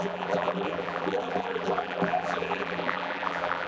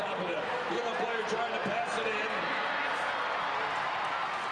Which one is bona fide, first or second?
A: second